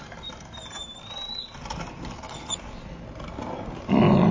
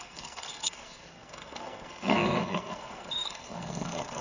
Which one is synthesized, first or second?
second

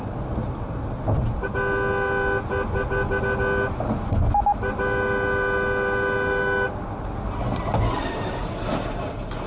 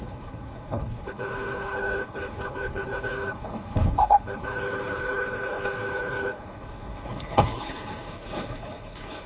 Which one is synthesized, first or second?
second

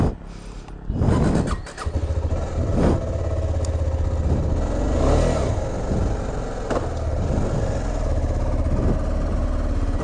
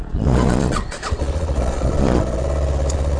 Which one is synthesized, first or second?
second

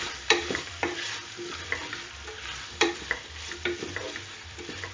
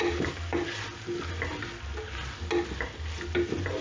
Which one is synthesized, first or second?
first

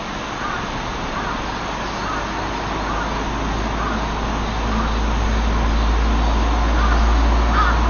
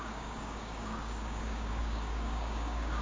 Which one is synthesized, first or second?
second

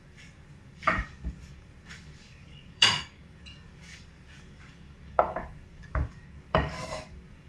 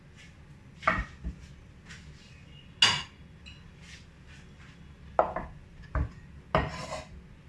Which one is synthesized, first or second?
first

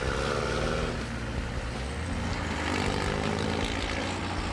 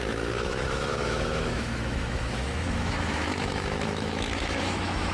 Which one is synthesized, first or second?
second